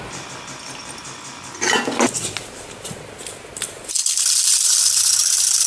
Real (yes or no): yes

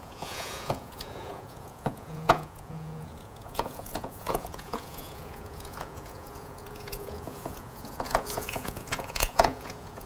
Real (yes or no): no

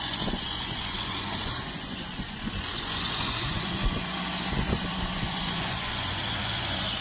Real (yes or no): no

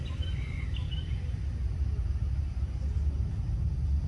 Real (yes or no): yes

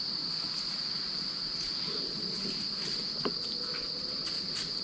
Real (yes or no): yes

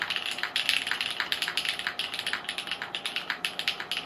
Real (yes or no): yes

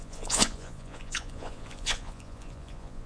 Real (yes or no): no